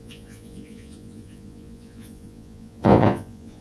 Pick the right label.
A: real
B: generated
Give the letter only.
B